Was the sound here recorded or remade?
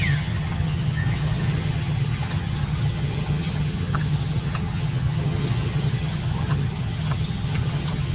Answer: remade